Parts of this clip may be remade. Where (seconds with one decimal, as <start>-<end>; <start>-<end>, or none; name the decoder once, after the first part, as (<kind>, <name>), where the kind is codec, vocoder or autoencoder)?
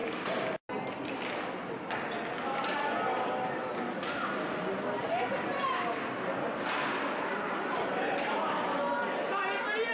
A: none